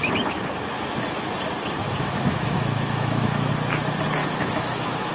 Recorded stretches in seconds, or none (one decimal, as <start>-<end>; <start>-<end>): 0.0-1.8; 3.5-4.2